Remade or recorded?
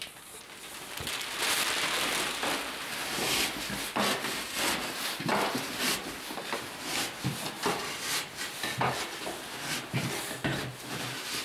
recorded